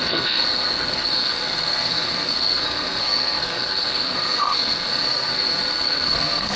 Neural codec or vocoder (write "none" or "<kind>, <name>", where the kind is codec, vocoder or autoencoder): codec, SNAC